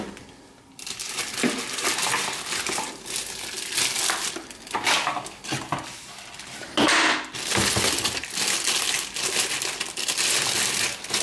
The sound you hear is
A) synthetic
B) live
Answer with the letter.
B